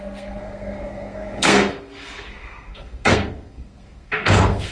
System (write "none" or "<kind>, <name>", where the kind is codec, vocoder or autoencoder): codec, SNAC